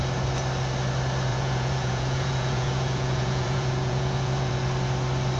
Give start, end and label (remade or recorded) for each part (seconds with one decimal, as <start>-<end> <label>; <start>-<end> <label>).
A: 0.0-1.3 recorded; 1.3-4.5 remade; 4.5-5.4 recorded